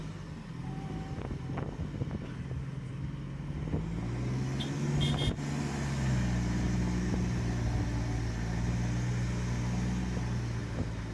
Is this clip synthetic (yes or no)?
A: no